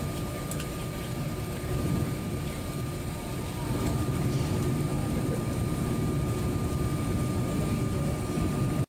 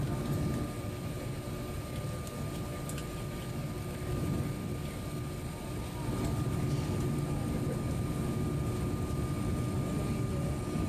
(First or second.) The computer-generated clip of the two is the first